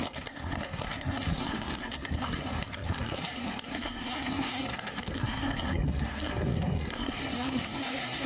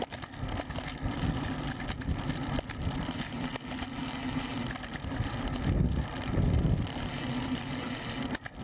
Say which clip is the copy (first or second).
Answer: first